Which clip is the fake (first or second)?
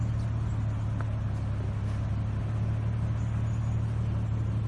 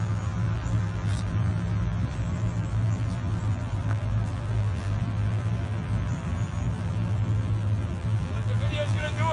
second